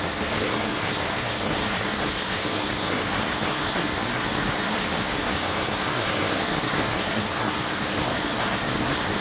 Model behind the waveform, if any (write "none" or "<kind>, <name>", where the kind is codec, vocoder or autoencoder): codec, SNAC